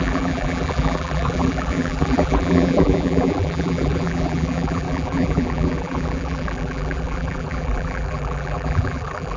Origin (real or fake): fake